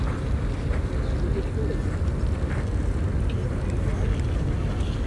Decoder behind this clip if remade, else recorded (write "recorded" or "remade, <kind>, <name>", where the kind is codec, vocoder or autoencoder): recorded